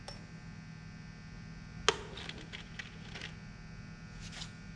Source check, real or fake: real